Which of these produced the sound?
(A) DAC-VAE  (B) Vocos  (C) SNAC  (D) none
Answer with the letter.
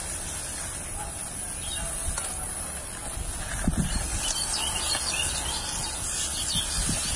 D